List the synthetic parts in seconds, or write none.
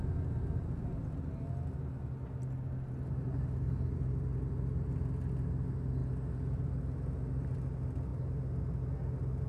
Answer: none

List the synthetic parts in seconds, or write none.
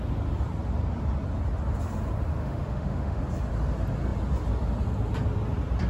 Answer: 2.4-3.2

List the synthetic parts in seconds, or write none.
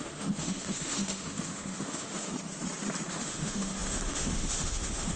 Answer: 0.0-2.3; 3.1-5.2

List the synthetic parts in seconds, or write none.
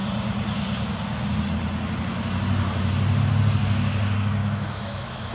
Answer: 4.4-5.3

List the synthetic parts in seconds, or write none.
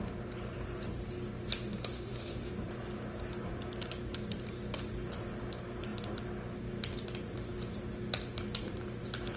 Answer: 1.7-2.5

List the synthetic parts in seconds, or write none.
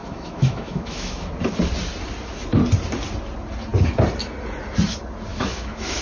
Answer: 0.0-1.3; 5.3-6.0